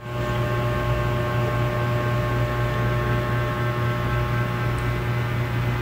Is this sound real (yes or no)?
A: yes